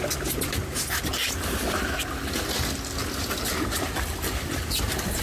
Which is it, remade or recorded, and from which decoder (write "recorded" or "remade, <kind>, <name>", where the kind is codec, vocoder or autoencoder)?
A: recorded